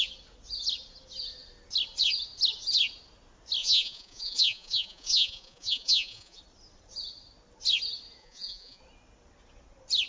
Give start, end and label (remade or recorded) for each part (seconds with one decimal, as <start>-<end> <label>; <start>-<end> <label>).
0.0-3.6 recorded; 3.6-6.4 remade; 6.4-8.2 recorded; 8.2-8.8 remade; 8.8-10.1 recorded